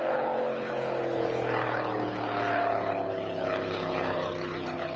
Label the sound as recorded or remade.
remade